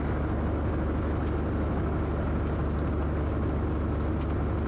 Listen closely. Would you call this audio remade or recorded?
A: recorded